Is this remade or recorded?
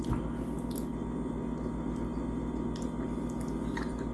recorded